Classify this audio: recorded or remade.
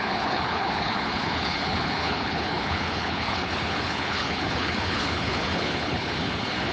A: remade